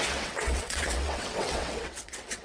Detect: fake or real fake